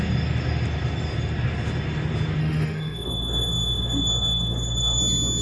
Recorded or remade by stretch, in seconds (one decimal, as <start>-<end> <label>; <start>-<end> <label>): 0.0-2.4 recorded; 2.4-5.0 remade; 5.0-5.4 recorded